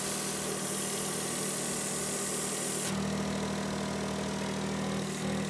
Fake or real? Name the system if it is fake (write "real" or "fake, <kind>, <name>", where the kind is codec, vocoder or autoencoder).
real